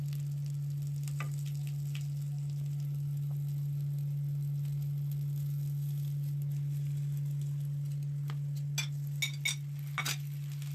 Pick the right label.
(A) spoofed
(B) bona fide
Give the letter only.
B